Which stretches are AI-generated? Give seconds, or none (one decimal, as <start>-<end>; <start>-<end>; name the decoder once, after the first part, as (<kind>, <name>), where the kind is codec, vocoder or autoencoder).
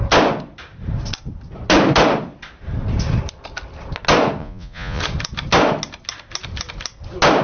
4.4-5.0 (vocoder, Vocos)